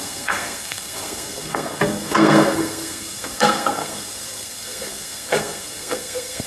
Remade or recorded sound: remade